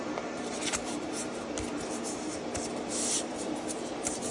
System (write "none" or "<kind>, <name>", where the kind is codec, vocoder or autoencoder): vocoder, BigVGAN v2